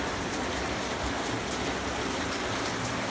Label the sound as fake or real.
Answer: real